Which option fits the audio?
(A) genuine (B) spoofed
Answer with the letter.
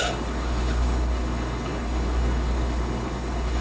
B